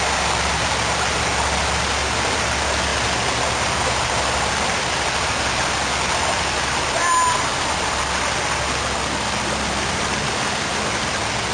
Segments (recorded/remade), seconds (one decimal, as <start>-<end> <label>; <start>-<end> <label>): 0.0-11.5 recorded